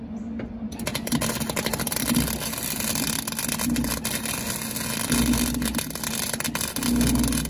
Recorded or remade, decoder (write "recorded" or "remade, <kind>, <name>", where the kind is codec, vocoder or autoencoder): recorded